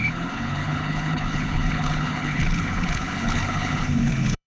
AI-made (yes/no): yes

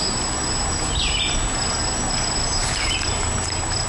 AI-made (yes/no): no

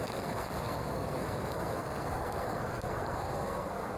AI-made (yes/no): yes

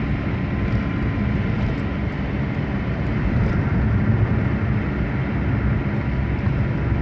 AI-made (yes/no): no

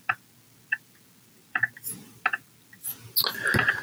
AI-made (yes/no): no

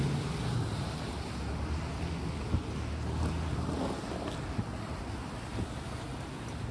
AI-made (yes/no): no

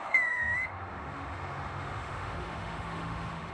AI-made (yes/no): yes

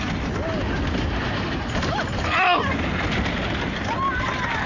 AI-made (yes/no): no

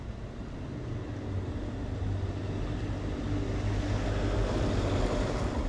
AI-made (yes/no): no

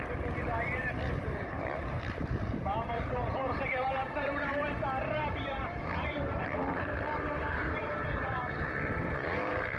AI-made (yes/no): yes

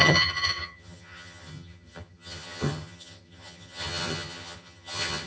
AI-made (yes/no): yes